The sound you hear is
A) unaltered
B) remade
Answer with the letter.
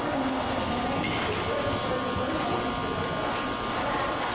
A